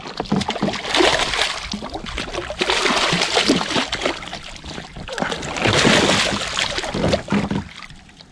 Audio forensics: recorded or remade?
recorded